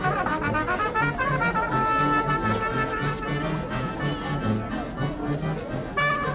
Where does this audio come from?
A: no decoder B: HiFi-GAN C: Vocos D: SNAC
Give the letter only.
A